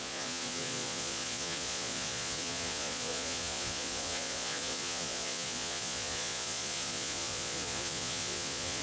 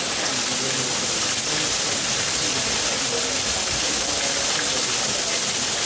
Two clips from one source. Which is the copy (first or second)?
first